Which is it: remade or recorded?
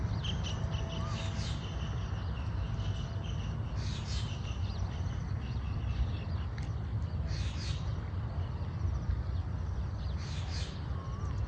recorded